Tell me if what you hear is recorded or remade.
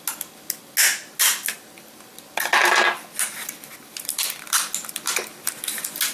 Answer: recorded